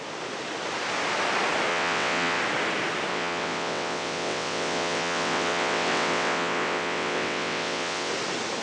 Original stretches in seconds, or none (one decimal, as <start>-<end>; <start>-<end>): 0.0-1.7; 2.4-3.1; 8.1-8.6